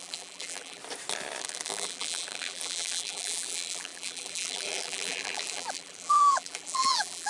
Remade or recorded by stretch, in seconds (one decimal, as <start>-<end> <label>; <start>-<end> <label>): 0.0-0.8 remade; 0.8-1.4 recorded; 1.4-7.3 remade